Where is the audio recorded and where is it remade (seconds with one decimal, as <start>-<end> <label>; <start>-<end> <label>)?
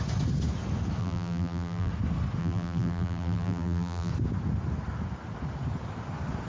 0.0-1.0 recorded; 1.0-1.9 remade; 1.9-2.4 recorded; 2.4-4.1 remade; 4.1-6.5 recorded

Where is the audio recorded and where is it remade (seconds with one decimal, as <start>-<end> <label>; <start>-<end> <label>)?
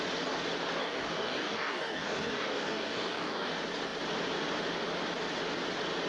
0.0-0.8 recorded; 0.8-3.5 remade; 3.5-6.1 recorded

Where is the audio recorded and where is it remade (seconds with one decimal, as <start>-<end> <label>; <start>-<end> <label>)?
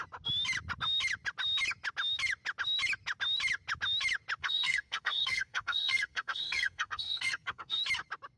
0.0-4.4 recorded; 4.4-7.8 remade; 7.8-8.4 recorded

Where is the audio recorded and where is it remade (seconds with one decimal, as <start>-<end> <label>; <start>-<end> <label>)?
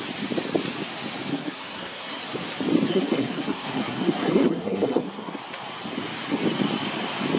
0.0-1.3 recorded; 1.3-2.2 remade; 2.2-2.9 recorded; 2.9-5.4 remade; 5.4-7.4 recorded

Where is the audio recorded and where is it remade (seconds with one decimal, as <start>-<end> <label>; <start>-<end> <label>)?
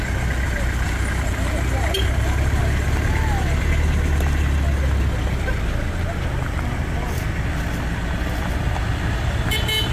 0.0-9.9 recorded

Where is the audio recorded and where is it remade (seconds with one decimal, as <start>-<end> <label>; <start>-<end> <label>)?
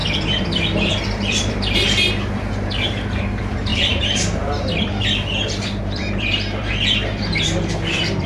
0.0-2.1 remade; 2.1-3.7 recorded; 3.7-8.3 remade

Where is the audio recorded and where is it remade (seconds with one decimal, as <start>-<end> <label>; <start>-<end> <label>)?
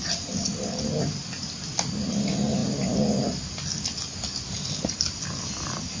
0.0-6.0 recorded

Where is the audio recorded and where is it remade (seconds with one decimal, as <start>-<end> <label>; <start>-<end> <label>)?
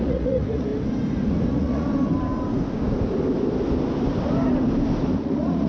0.0-0.7 remade; 0.7-1.5 recorded; 1.5-1.9 remade; 1.9-5.2 recorded; 5.2-5.7 remade